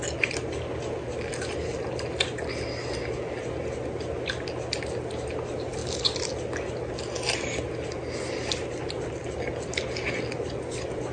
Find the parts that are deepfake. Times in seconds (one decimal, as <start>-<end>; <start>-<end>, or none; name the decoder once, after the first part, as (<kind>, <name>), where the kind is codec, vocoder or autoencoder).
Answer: none